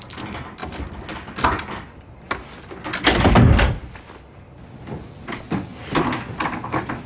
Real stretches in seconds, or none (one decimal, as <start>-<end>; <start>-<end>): 0.0-7.1